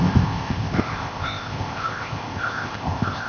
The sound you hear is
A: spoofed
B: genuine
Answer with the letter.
A